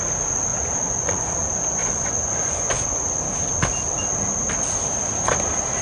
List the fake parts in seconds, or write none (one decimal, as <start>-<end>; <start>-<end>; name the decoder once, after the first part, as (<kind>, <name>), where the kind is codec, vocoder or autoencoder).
0.5-3.1 (vocoder, Vocos)